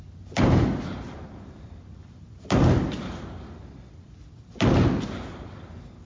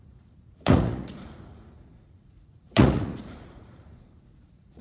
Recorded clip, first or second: first